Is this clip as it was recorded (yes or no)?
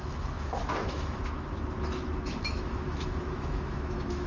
no